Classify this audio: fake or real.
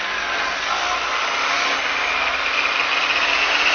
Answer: real